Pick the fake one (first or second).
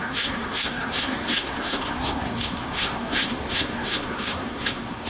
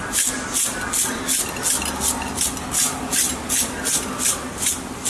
first